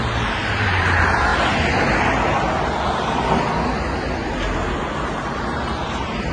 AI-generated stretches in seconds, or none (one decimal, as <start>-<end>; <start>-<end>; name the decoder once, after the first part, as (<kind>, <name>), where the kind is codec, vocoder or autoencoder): 0.0-1.3 (vocoder, BigVGAN v2); 5.0-6.3